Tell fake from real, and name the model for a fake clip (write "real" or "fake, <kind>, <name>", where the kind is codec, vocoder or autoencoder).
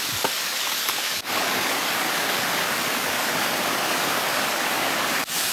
fake, codec, DAC